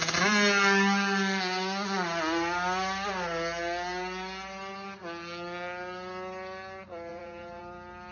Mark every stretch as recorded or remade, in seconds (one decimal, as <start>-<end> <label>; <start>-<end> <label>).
0.0-7.1 recorded; 7.1-7.6 remade; 7.6-8.1 recorded